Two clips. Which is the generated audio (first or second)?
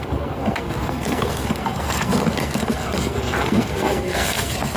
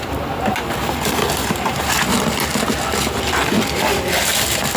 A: first